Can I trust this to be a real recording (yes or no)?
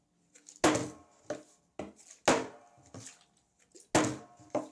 yes